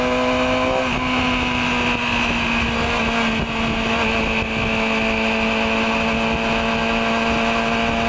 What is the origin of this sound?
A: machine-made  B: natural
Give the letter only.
B